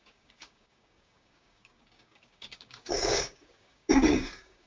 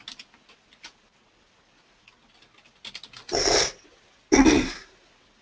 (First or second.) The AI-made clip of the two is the first